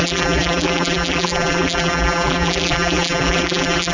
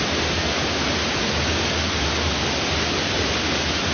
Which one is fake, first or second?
first